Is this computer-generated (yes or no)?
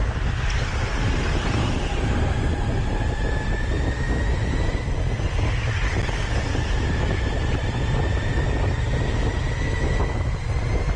no